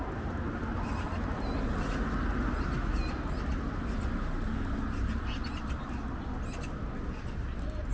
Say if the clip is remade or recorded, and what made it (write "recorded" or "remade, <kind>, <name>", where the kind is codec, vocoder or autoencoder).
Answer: recorded